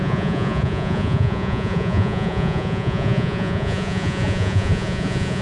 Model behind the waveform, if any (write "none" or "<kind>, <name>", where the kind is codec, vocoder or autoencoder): vocoder, Vocos